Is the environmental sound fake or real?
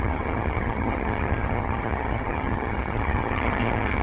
fake